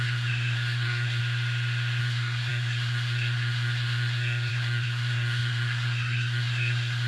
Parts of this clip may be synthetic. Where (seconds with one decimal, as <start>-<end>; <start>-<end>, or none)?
0.0-1.2; 2.0-7.1